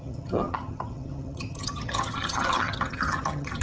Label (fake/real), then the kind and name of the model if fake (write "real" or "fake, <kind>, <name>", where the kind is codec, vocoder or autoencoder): fake, vocoder, HiFi-GAN